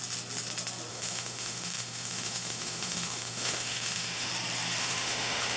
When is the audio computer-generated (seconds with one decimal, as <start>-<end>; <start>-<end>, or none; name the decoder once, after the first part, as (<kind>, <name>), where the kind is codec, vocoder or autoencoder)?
0.9-4.3 (autoencoder, DAC-VAE); 4.8-5.6